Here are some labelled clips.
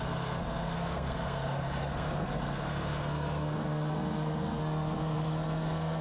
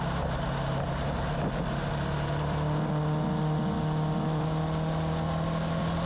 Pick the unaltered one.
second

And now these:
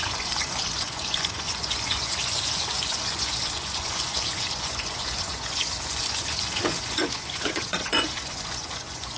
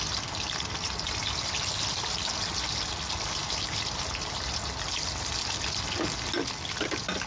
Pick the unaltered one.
second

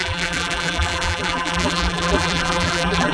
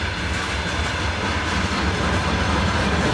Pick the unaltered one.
second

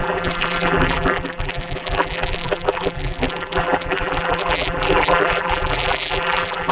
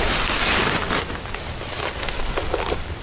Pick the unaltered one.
second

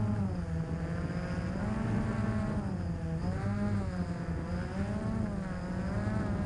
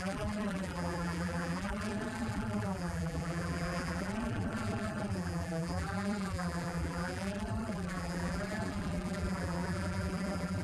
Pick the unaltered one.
first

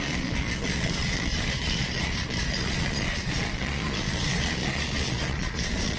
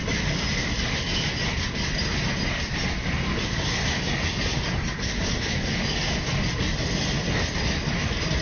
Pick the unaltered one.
second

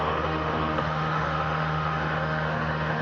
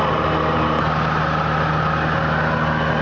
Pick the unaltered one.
second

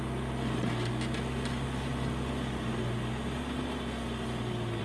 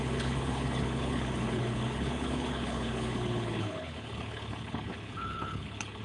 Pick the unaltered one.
first